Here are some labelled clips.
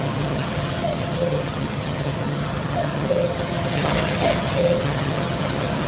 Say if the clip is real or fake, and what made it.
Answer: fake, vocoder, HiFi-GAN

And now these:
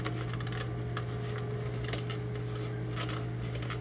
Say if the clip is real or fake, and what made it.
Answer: real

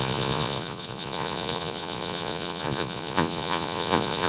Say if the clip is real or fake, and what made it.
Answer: fake, vocoder, Vocos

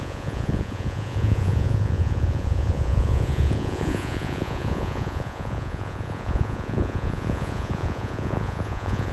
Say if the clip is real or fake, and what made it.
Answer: fake, vocoder, Vocos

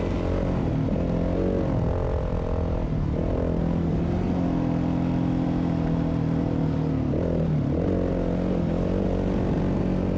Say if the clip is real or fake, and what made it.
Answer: real